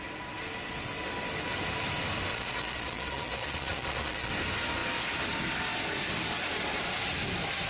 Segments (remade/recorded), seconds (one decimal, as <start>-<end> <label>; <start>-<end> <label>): 0.0-2.3 recorded; 2.3-4.3 remade; 4.3-7.7 recorded

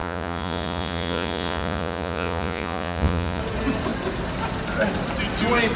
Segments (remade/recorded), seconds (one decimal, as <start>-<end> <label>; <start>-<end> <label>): 0.0-3.4 remade; 3.4-5.8 recorded

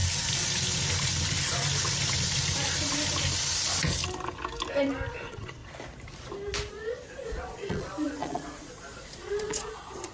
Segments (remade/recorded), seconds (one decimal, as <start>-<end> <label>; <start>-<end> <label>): 0.0-5.1 recorded; 5.1-5.6 remade; 5.6-6.7 recorded; 6.7-10.1 remade

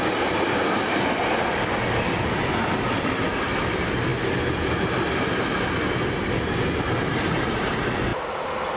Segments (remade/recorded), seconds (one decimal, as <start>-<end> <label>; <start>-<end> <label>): 0.0-8.8 recorded

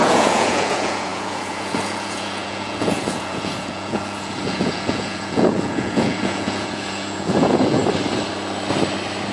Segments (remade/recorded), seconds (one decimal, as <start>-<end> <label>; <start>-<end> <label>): 0.0-7.8 remade; 7.8-9.3 recorded